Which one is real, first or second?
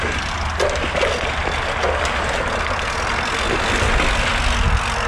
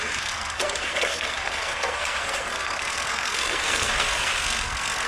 first